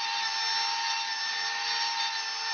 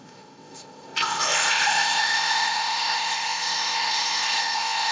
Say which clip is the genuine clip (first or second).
first